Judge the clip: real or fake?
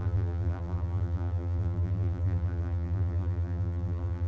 fake